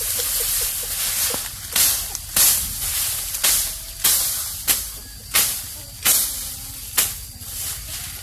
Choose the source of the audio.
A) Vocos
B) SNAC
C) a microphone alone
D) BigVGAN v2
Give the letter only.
C